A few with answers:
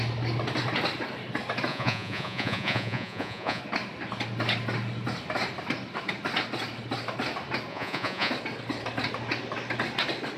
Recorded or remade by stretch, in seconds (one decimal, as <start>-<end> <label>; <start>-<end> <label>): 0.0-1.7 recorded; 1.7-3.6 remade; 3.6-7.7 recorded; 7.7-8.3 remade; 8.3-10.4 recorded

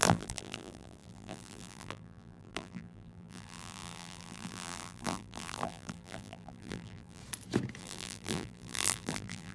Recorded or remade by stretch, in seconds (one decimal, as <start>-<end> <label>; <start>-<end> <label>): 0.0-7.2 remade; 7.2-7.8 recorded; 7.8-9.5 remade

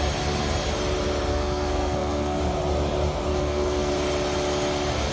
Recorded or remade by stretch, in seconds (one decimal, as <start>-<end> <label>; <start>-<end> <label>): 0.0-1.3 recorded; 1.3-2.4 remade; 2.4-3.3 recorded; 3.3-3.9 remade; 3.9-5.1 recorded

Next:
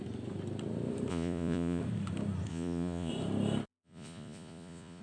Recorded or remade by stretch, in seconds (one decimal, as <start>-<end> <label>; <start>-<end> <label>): 0.0-1.1 recorded; 1.1-1.8 remade; 1.8-2.5 recorded; 2.5-3.1 remade; 3.1-3.7 recorded; 3.7-5.0 remade